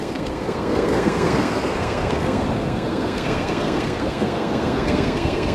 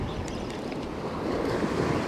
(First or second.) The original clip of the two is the second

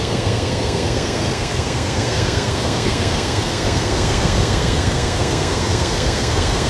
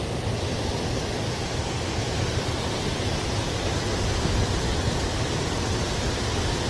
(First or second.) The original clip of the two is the second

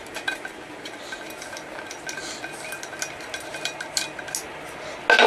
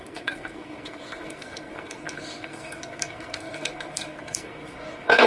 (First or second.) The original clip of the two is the first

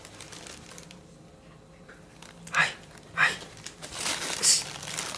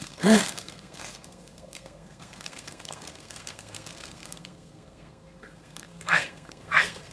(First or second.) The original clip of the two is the first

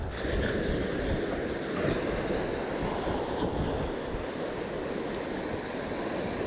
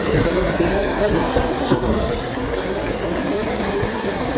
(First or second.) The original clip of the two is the first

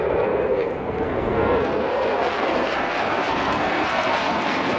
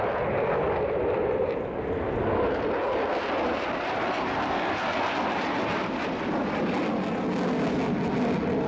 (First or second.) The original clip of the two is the second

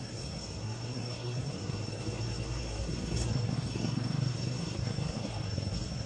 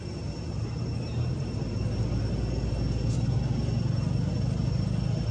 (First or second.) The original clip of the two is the second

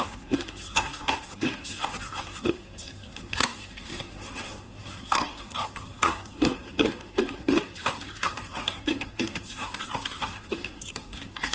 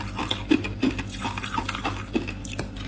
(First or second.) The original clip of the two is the second